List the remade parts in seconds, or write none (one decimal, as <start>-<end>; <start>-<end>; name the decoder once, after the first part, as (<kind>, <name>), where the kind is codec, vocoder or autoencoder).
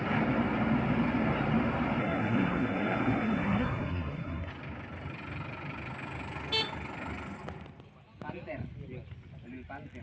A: 2.0-4.5 (codec, SNAC)